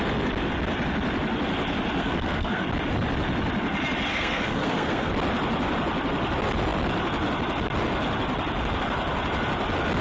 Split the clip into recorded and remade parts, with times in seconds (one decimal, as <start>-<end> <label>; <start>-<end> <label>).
0.0-2.0 recorded; 2.0-2.7 remade; 2.7-4.1 recorded; 4.1-5.1 remade; 5.1-10.0 recorded